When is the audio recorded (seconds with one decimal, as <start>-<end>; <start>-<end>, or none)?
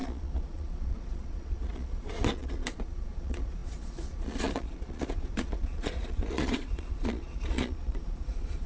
none